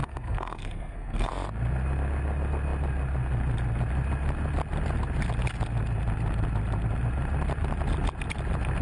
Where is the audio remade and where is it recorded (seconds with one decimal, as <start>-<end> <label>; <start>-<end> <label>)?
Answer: 0.0-1.3 remade; 1.3-8.8 recorded